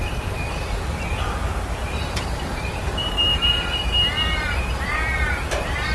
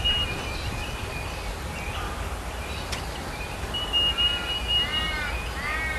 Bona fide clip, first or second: second